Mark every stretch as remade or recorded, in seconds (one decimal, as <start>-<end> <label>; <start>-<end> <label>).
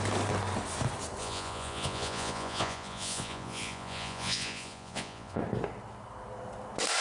0.0-1.2 recorded; 1.2-5.4 remade; 5.4-7.0 recorded